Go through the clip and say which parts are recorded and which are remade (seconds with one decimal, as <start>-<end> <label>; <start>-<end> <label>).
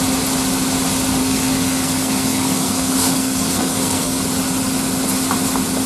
0.0-1.2 recorded; 1.2-4.2 remade; 4.2-5.9 recorded